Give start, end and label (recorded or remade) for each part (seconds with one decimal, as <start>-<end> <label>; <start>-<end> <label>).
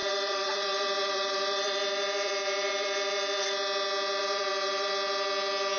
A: 0.0-3.5 remade; 3.5-4.2 recorded; 4.2-4.9 remade; 4.9-5.8 recorded